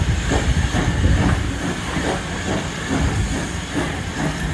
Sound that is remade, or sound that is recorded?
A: recorded